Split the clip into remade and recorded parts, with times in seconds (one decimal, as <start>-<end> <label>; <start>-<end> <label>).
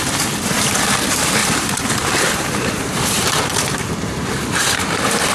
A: 0.0-1.4 recorded; 1.4-3.4 remade; 3.4-5.3 recorded